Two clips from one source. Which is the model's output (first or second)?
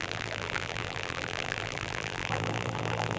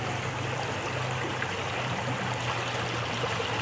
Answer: first